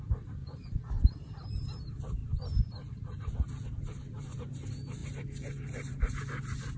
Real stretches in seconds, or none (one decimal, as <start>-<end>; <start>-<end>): 0.0-0.4; 0.9-6.8